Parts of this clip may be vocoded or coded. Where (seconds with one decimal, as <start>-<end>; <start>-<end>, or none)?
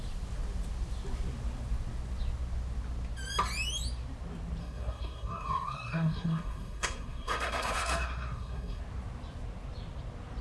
4.6-8.8